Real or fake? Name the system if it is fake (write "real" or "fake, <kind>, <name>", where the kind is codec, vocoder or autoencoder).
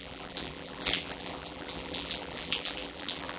fake, vocoder, BigVGAN v2